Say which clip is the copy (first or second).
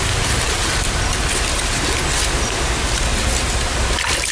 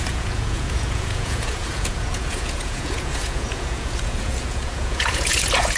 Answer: second